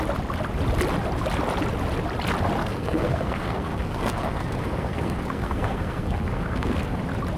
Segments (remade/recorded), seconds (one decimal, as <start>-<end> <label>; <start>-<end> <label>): 0.0-2.6 recorded; 2.6-7.0 remade; 7.0-7.4 recorded